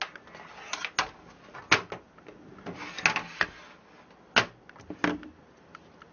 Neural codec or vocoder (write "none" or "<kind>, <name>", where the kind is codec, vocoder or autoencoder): none